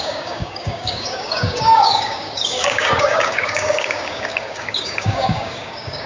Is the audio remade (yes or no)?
yes